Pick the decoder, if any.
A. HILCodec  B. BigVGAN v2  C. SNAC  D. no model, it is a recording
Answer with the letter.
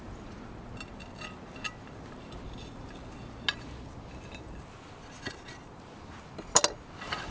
D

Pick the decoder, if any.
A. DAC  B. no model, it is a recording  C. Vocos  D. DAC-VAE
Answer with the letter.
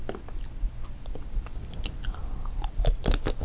B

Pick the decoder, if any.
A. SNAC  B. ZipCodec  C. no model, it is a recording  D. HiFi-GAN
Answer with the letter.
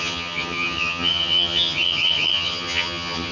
D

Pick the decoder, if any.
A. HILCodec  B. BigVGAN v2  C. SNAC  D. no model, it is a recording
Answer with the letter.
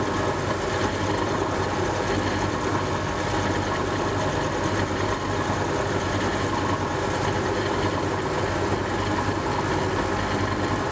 D